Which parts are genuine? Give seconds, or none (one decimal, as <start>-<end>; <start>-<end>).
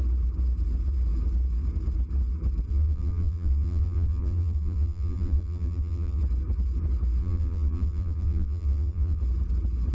0.0-2.7; 6.2-7.2; 9.2-9.9